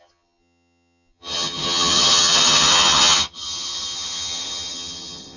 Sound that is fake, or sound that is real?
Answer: fake